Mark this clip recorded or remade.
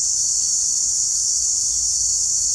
remade